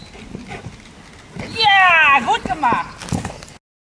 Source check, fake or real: real